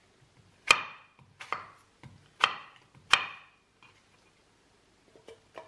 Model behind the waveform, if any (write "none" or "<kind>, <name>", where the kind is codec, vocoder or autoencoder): none